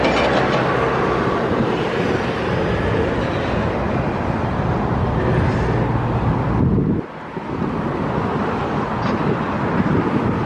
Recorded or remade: recorded